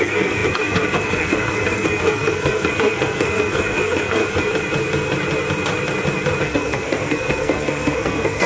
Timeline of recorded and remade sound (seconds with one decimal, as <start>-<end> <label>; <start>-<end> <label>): 0.0-4.2 remade; 4.2-6.4 recorded; 6.4-8.5 remade